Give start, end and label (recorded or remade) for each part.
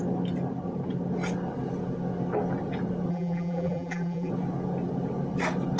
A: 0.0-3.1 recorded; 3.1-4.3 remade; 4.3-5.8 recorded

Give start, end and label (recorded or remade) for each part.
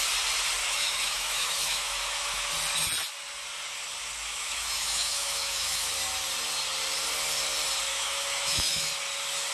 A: 0.0-0.6 recorded; 0.6-2.5 remade; 2.5-4.3 recorded; 4.3-5.9 remade; 5.9-7.9 recorded; 7.9-8.9 remade; 8.9-9.5 recorded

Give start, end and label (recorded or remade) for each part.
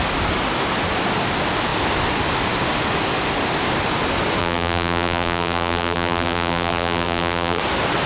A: 0.0-4.4 recorded; 4.4-7.6 remade; 7.6-8.1 recorded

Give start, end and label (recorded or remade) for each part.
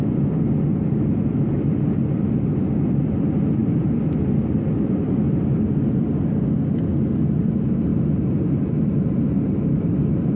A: 0.0-3.6 recorded; 3.6-5.5 remade; 5.5-7.9 recorded; 7.9-9.1 remade; 9.1-10.4 recorded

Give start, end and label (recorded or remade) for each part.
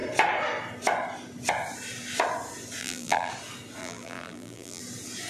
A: 0.0-2.8 recorded; 2.8-3.3 remade; 3.3-3.8 recorded; 3.8-4.8 remade; 4.8-5.3 recorded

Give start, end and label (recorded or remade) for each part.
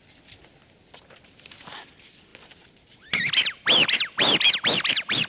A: 0.0-5.3 recorded